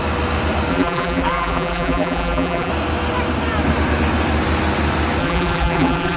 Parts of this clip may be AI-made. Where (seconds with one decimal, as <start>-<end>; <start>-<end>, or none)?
0.7-2.7; 5.2-6.2